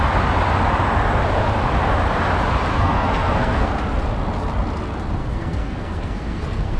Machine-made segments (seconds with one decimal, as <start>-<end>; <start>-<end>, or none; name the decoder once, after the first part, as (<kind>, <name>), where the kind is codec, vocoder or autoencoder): 2.7-3.7 (codec, SNAC); 5.2-6.8